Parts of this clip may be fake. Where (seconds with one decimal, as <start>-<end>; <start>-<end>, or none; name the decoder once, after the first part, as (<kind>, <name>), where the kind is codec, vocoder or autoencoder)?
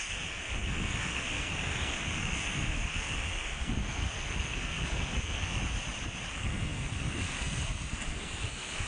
0.0-5.6 (codec, SNAC); 6.3-8.9